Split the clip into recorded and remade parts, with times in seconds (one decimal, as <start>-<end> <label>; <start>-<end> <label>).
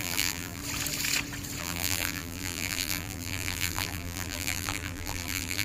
0.0-0.6 remade; 0.6-1.6 recorded; 1.6-5.6 remade